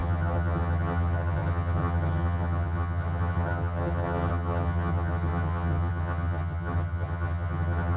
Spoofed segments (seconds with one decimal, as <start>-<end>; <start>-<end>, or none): 0.0-8.0